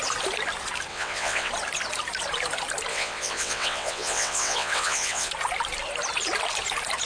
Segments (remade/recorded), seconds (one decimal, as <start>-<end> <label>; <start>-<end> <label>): 0.0-0.9 recorded; 0.9-1.5 remade; 1.5-2.9 recorded; 2.9-5.3 remade; 5.3-7.1 recorded